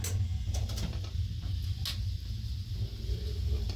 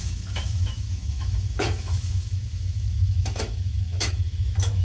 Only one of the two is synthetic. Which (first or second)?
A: second